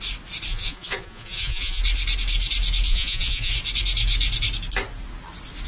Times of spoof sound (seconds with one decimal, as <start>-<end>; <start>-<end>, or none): 0.5-1.8; 2.9-3.5